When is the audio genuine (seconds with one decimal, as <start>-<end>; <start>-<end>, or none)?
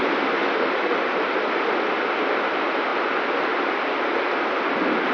0.0-5.1